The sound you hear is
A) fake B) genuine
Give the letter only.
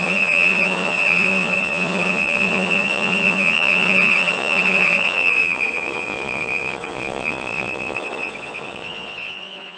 A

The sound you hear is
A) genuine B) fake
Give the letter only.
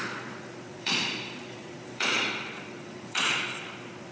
B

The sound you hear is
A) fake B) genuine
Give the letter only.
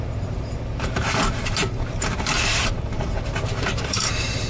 A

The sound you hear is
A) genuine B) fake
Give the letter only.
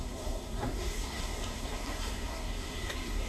B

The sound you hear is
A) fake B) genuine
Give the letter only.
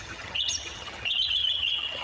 A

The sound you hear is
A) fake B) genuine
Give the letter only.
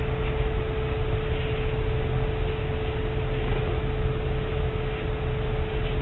B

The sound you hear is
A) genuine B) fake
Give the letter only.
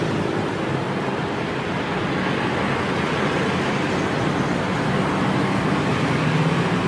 A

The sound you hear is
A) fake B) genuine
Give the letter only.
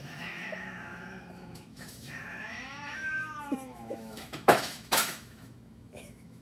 A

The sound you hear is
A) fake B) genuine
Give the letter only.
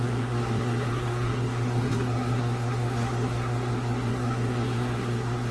A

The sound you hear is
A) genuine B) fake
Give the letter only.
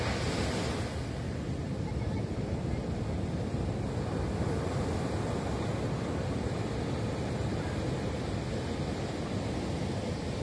A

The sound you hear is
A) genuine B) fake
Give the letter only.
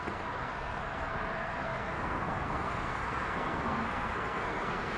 B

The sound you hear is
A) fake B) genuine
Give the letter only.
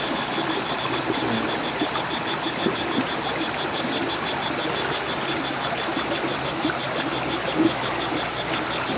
B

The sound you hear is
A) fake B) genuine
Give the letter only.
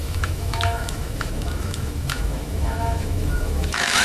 A